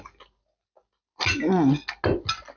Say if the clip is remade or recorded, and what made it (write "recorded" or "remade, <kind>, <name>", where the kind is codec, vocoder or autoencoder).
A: recorded